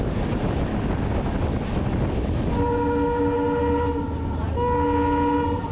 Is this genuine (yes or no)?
yes